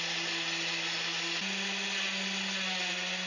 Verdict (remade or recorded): recorded